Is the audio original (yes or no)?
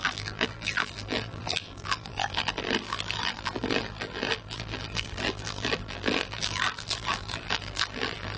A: no